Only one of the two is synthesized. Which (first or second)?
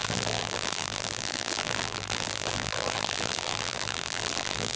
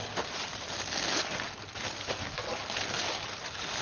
first